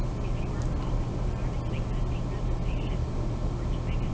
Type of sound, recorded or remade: recorded